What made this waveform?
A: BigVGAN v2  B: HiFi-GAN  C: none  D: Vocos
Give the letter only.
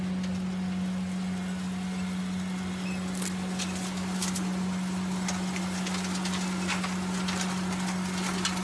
C